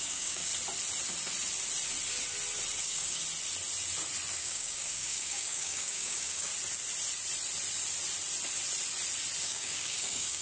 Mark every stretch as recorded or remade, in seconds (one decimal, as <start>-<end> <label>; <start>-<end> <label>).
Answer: 0.0-0.5 remade; 0.5-2.8 recorded; 2.8-3.2 remade; 3.2-4.4 recorded; 4.4-6.5 remade; 6.5-9.4 recorded; 9.4-10.4 remade